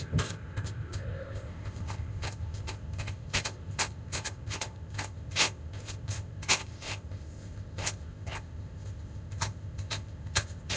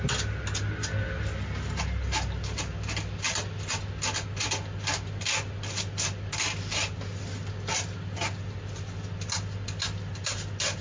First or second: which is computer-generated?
first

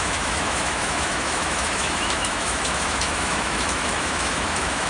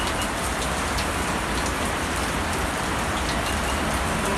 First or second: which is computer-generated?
first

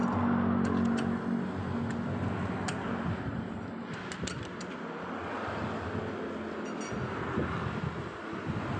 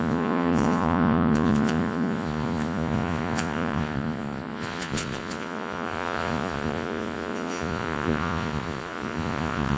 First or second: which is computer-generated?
second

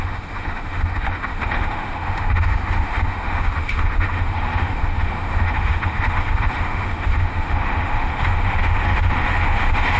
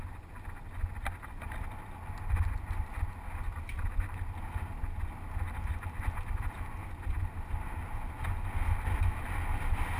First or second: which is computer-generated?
first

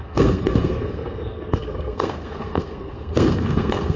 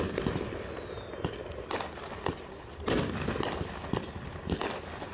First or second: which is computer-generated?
first